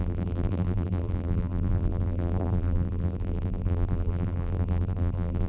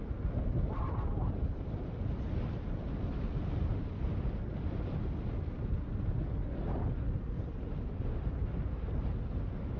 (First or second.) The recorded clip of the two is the second